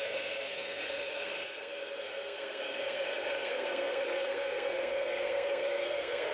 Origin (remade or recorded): remade